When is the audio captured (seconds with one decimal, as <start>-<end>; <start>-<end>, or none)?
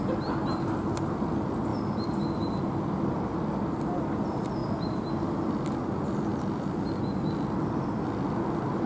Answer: 0.0-4.6; 5.4-8.9